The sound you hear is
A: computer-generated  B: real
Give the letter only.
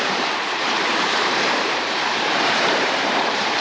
A